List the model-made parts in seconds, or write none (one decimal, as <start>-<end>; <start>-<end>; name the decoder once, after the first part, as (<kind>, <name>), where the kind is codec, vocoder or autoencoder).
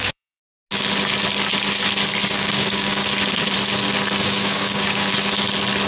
0.0-0.4 (codec, DAC); 2.3-3.0; 4.2-5.1